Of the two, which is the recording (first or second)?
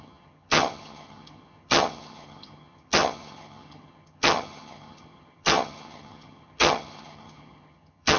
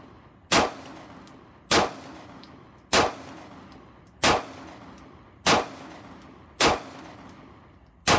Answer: second